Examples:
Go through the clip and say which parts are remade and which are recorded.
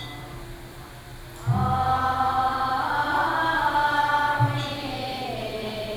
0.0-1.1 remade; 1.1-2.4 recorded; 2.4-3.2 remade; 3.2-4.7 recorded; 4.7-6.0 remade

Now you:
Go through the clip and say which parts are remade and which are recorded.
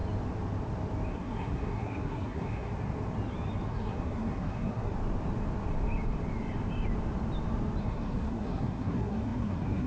0.0-1.1 recorded; 1.1-2.7 remade; 2.7-3.7 recorded; 3.7-4.9 remade; 4.9-7.8 recorded; 7.8-9.9 remade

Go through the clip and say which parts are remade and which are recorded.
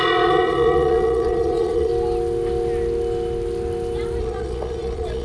0.0-1.9 remade; 1.9-4.2 recorded; 4.2-5.2 remade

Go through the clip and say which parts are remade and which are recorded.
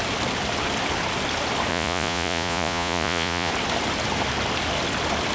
0.0-1.7 recorded; 1.7-3.5 remade; 3.5-5.3 recorded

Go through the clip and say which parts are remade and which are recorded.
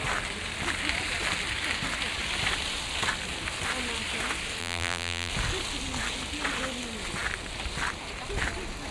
0.0-4.6 recorded; 4.6-5.3 remade; 5.3-8.9 recorded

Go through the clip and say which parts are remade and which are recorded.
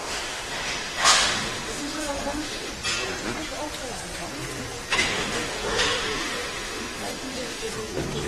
0.0-2.7 remade; 2.7-4.9 recorded; 4.9-7.7 remade; 7.7-8.3 recorded